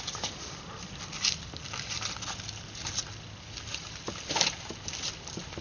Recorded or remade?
recorded